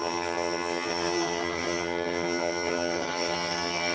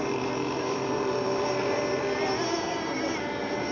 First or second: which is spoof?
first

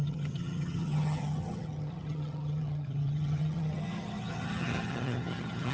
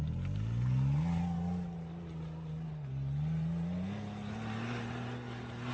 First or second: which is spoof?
first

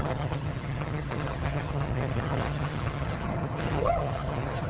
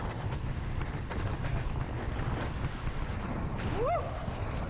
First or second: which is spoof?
first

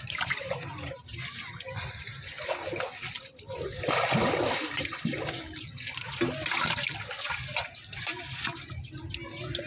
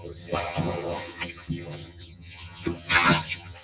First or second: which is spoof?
second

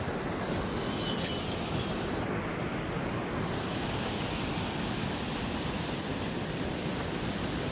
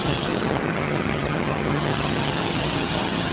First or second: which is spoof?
second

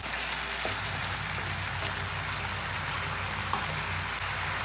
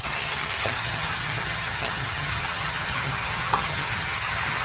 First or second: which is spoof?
second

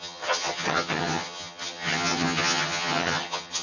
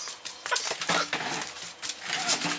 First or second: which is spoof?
first